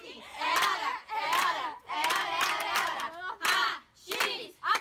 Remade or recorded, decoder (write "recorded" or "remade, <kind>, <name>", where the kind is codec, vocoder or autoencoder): recorded